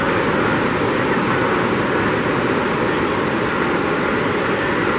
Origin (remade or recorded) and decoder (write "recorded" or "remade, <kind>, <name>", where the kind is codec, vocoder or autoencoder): recorded